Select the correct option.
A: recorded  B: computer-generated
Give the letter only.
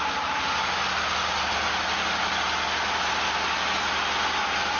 A